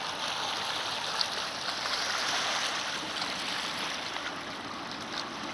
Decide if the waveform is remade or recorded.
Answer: recorded